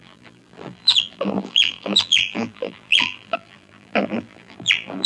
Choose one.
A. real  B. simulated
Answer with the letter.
B